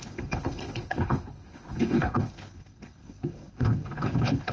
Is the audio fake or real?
fake